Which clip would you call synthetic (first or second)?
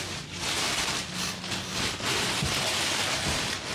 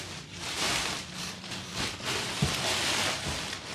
second